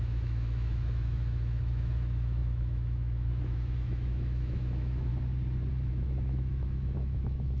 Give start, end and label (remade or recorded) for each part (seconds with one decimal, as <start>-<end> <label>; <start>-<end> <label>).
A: 0.0-5.1 remade; 5.1-5.7 recorded; 5.7-7.6 remade